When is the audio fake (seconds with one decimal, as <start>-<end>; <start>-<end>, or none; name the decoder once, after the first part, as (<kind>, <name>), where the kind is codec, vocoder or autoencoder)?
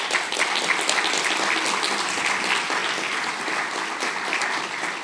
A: none